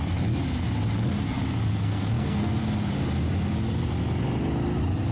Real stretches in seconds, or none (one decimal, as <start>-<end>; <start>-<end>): 0.0-1.7; 2.6-5.1